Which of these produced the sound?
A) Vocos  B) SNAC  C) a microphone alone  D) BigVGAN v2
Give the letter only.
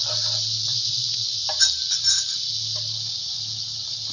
C